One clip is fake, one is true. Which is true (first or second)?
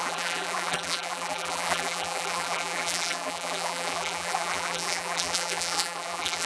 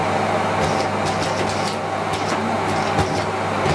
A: second